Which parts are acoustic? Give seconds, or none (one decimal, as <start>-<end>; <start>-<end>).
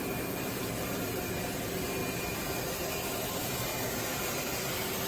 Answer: 2.0-3.3; 3.7-5.1